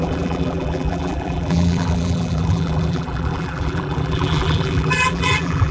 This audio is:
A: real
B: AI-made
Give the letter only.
B